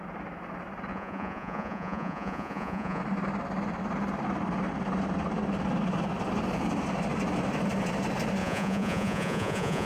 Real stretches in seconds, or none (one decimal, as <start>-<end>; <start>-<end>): 0.0-0.9; 3.0-8.4